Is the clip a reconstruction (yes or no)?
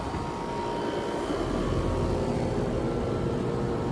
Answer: no